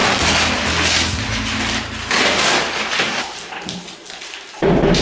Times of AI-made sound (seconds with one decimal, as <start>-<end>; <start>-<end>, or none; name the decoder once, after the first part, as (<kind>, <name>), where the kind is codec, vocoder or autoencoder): none